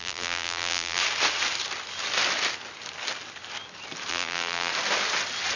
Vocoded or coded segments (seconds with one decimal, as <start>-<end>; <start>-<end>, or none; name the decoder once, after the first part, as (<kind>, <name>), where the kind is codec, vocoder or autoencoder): 0.0-1.0 (vocoder, BigVGAN v2); 4.1-4.7